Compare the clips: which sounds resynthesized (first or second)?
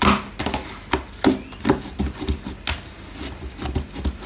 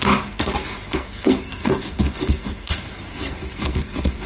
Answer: second